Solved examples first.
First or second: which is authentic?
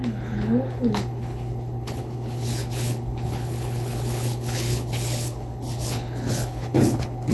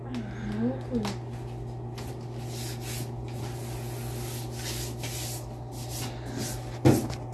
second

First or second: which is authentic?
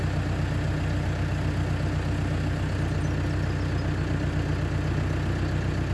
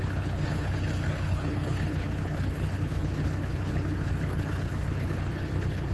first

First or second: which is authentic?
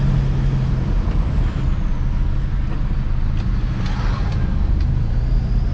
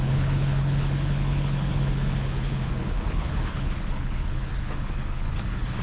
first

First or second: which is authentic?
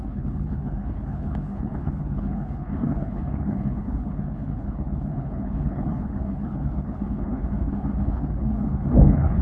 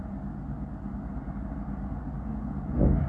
second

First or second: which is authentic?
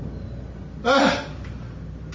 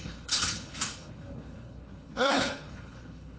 first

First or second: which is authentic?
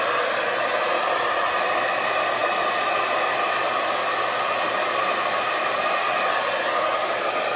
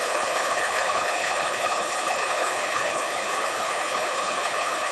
first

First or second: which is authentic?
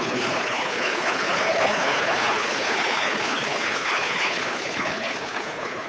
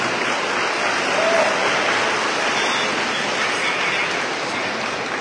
second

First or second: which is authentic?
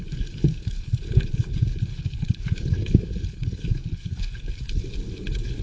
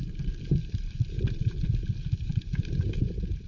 second